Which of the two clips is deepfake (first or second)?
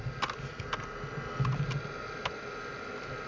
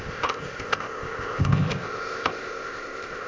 second